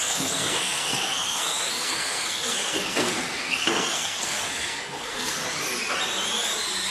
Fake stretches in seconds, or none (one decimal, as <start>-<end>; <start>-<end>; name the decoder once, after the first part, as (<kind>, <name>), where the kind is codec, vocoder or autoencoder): 0.0-5.4 (codec, SNAC)